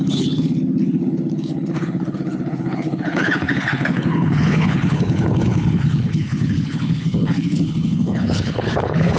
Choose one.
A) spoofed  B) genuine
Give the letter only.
A